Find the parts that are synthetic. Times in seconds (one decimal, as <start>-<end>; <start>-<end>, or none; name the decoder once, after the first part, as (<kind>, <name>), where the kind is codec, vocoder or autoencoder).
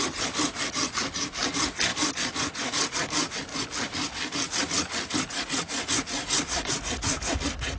none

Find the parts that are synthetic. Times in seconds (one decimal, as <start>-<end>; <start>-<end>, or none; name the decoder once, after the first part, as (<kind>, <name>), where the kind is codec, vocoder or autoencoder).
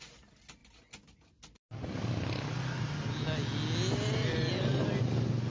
none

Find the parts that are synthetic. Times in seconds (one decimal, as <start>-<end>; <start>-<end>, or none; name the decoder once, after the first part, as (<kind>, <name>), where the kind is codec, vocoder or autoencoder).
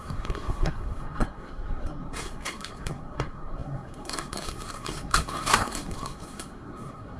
0.0-7.2 (codec, SNAC)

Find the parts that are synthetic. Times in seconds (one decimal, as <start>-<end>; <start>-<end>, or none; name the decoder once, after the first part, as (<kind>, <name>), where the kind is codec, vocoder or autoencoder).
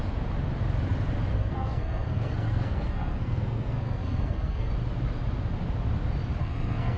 1.3-4.7 (codec, SNAC); 6.4-7.0